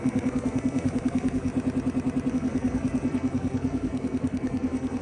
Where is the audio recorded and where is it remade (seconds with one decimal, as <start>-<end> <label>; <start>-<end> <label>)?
0.0-1.5 remade; 1.5-2.3 recorded; 2.3-5.0 remade